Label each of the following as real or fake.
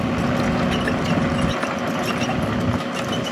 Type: real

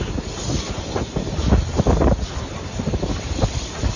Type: real